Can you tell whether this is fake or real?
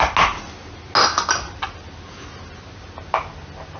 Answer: real